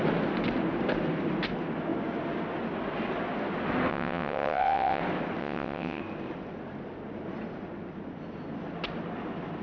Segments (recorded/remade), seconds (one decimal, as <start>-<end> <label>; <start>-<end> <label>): 0.0-3.9 recorded; 3.9-5.0 remade; 5.0-5.4 recorded; 5.4-6.0 remade; 6.0-9.6 recorded